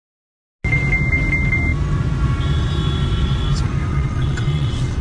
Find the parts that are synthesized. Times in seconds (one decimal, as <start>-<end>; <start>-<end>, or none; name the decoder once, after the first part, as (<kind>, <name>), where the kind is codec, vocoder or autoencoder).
3.9-5.0 (vocoder, WaveNeXt)